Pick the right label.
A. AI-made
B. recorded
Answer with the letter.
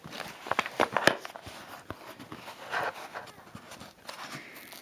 B